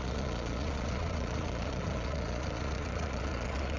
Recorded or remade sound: remade